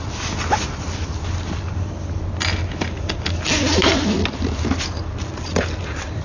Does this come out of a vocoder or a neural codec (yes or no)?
no